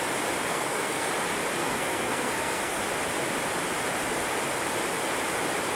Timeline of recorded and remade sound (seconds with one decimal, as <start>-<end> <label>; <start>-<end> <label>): 0.0-0.5 recorded; 0.5-1.1 remade; 1.1-1.6 recorded; 1.6-2.8 remade; 2.8-5.8 recorded